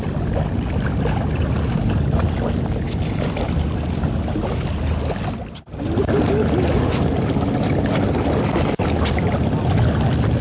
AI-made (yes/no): no